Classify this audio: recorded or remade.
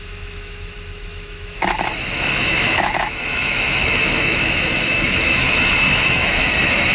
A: remade